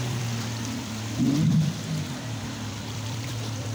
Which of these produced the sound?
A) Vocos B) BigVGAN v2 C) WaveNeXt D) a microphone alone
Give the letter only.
B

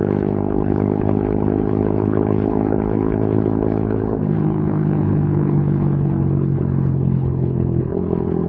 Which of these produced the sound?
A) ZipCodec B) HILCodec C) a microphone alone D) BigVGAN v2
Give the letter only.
B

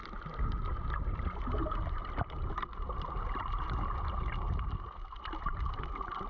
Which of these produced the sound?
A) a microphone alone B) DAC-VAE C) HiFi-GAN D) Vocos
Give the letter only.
A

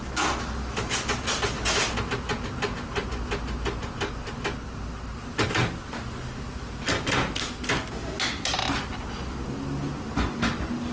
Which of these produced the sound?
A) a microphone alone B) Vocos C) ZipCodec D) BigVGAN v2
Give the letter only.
A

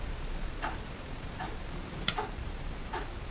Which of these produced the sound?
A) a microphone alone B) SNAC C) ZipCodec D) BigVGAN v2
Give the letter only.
D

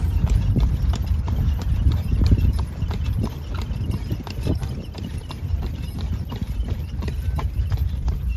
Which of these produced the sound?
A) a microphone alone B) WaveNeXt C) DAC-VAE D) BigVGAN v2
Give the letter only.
D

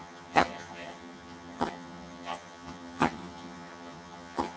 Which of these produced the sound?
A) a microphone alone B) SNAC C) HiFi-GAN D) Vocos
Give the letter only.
C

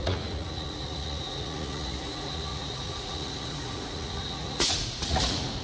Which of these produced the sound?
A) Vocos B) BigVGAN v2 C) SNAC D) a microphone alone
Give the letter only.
A